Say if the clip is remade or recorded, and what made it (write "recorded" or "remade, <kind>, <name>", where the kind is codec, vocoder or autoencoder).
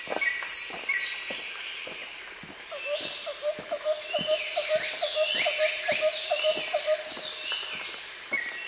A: recorded